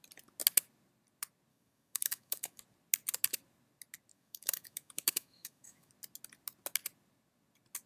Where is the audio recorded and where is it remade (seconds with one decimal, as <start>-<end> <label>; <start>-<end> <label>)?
0.0-1.5 recorded; 1.5-2.6 remade; 2.6-4.1 recorded; 4.1-5.9 remade; 5.9-7.9 recorded